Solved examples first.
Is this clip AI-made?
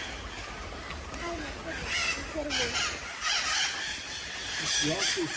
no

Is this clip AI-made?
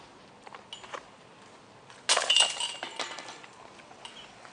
no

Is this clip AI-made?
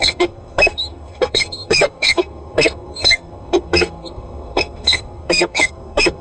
yes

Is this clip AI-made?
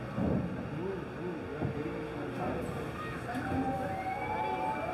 no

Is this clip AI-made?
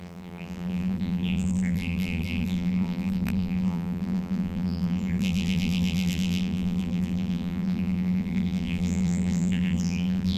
yes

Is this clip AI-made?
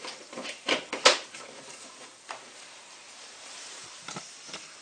yes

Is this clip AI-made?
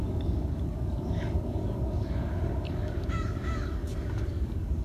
yes